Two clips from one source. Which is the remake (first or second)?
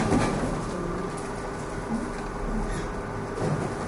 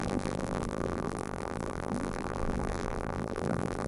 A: second